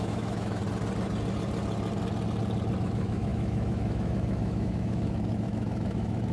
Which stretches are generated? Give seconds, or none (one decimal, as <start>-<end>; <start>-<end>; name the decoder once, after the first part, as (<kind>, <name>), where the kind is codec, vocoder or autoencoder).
0.0-0.6 (autoencoder, DAC-VAE); 2.8-6.3